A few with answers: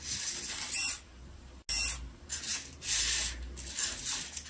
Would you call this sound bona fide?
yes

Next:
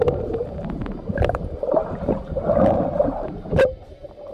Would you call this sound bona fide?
no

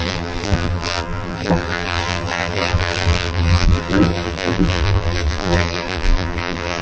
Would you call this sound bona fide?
no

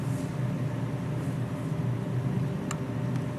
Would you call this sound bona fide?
yes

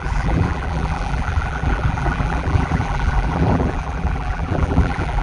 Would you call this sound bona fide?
no